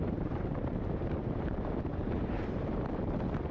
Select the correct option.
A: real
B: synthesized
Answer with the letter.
B